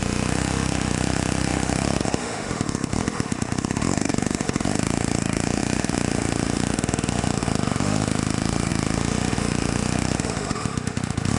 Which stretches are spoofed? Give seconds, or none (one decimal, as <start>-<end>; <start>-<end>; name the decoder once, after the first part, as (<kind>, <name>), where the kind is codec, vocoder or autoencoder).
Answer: 0.0-11.4 (autoencoder, DAC-VAE)

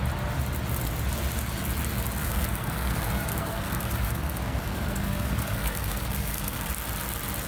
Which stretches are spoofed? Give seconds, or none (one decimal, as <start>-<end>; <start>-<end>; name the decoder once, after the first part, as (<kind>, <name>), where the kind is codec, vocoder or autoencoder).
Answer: 2.2-6.7 (codec, SNAC)

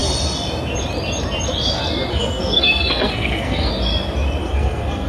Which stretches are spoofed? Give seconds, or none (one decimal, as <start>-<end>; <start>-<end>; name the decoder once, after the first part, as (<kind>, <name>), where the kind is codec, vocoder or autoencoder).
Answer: 2.1-3.7 (codec, SNAC); 4.4-5.1

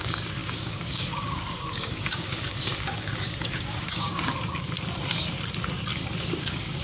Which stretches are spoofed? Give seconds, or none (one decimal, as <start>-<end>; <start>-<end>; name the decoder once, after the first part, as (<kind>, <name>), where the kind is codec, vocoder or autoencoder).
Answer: 0.0-4.3 (codec, DAC); 6.2-6.8

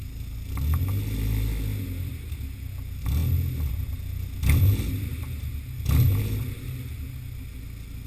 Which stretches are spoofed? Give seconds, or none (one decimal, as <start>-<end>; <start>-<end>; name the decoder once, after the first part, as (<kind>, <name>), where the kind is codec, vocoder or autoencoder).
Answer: none